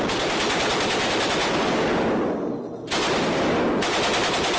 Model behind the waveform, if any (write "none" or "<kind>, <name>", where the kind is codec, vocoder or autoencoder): none